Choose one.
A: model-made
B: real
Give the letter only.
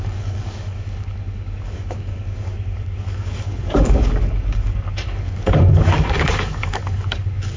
A